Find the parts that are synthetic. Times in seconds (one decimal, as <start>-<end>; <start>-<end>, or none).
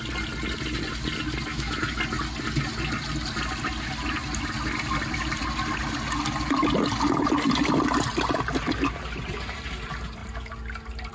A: 1.5-2.0